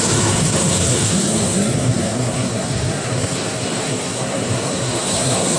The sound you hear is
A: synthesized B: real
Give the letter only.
A